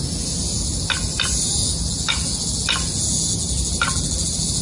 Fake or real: real